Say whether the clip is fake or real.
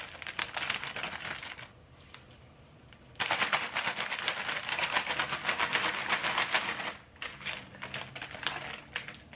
real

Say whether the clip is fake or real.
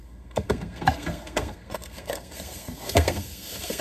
fake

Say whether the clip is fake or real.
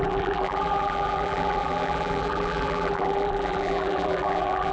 fake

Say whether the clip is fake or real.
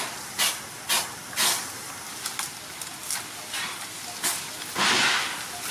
real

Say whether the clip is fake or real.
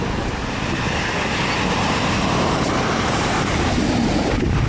real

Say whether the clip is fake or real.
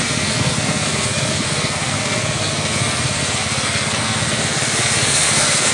fake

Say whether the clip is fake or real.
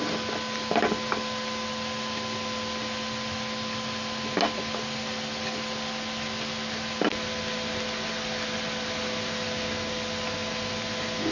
real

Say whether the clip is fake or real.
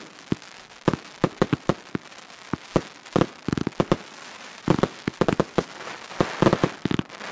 real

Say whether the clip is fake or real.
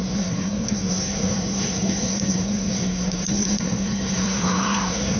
fake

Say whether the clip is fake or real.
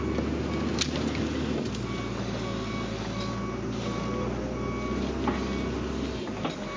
real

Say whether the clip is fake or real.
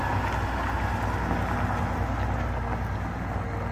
real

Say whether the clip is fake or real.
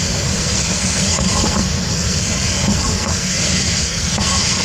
fake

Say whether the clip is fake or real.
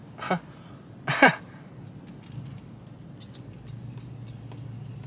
real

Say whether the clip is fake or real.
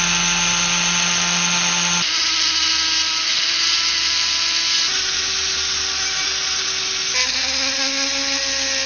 real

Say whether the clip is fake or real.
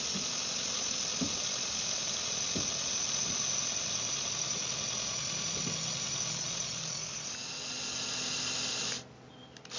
real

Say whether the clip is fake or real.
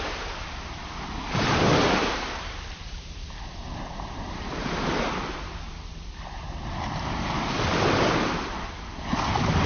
real